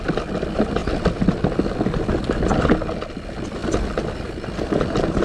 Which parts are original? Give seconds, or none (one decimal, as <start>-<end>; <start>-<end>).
0.0-5.2